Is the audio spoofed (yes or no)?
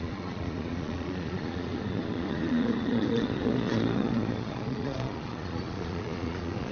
yes